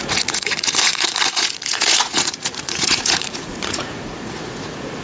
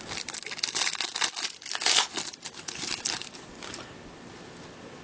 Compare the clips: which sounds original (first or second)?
second